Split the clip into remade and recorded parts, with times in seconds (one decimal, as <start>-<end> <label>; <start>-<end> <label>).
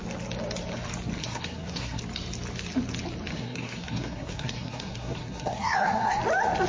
0.0-1.2 recorded; 1.2-2.0 remade; 2.0-3.3 recorded; 3.3-6.2 remade; 6.2-6.7 recorded